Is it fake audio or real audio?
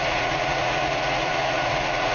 fake